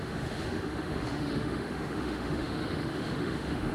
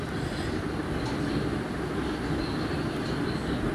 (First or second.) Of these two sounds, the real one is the second